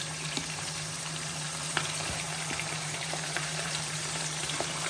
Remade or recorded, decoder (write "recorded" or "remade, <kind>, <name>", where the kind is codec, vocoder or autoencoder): remade, vocoder, BigVGAN v2